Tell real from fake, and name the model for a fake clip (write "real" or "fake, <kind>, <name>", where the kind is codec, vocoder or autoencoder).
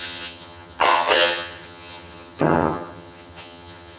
fake, vocoder, HiFi-GAN